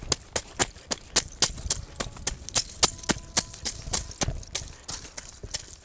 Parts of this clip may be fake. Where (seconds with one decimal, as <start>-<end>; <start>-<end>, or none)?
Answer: none

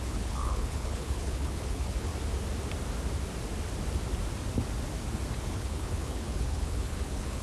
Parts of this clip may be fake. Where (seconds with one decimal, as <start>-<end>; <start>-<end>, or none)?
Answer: 0.0-2.1; 5.5-7.4

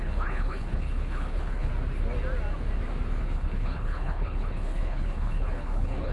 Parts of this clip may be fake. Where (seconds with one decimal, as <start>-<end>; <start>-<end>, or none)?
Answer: 0.0-1.7; 3.2-6.1

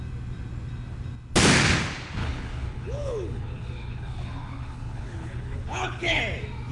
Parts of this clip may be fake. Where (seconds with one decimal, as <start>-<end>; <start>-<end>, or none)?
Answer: 2.2-6.2

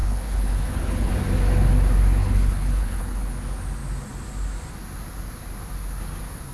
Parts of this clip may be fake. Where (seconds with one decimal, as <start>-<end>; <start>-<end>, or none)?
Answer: 0.0-1.1; 2.2-3.3

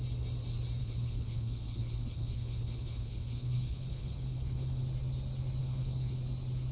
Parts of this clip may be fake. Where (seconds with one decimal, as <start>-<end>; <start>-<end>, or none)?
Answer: 0.8-4.8; 5.6-6.2

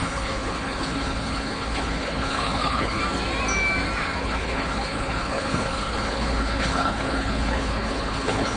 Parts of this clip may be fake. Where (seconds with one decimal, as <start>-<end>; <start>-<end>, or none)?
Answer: 0.0-3.0; 4.2-8.6

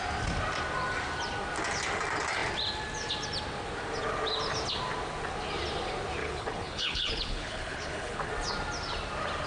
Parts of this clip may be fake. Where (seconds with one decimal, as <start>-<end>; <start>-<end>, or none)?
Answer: 6.2-8.3